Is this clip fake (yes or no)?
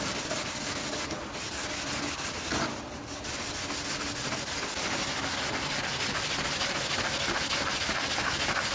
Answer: no